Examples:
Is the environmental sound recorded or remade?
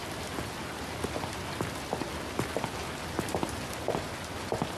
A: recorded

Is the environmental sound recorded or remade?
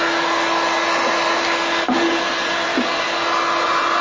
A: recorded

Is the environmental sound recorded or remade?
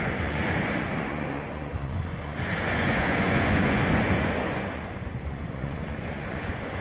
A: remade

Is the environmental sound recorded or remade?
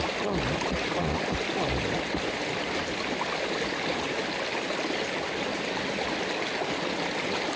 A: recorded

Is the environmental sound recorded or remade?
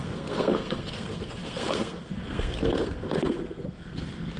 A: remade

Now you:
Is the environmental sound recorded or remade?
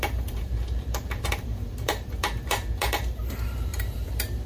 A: remade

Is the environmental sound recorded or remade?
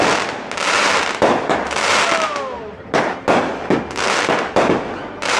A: recorded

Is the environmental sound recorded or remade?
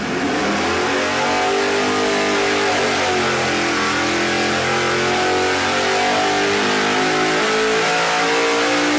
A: recorded